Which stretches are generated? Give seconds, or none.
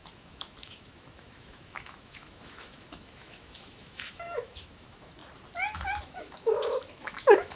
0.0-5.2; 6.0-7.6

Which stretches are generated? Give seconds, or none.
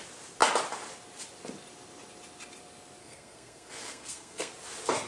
3.0-4.5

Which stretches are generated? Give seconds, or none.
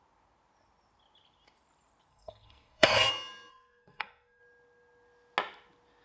2.1-3.1; 3.5-4.4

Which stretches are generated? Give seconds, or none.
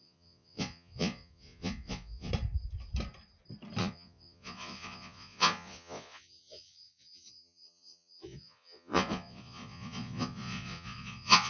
0.0-2.3; 3.8-11.5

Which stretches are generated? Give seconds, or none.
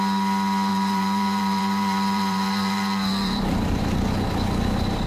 0.7-3.8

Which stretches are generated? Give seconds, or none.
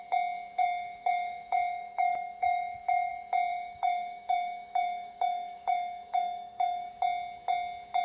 0.6-3.1; 3.5-6.9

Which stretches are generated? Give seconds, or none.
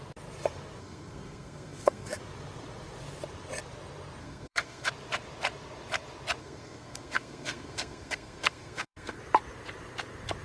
0.8-2.2; 4.2-4.9; 6.4-9.2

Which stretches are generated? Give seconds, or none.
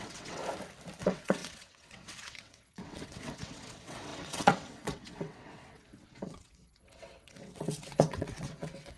0.0-0.4; 1.0-9.0